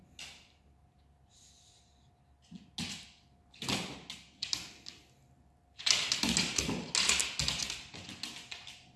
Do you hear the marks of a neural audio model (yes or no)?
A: no